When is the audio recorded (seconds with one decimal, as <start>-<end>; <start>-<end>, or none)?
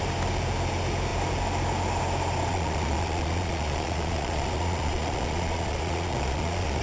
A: 0.0-2.5